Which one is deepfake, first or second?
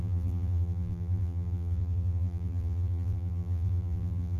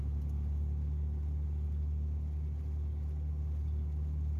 first